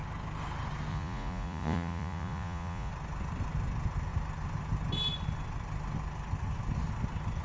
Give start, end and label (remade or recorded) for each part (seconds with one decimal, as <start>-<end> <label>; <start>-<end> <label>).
0.0-0.9 recorded; 0.9-2.9 remade; 2.9-7.4 recorded